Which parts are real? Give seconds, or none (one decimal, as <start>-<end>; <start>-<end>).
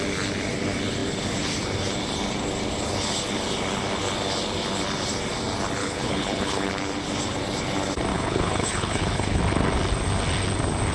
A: 0.0-5.8; 6.7-8.1; 9.4-10.9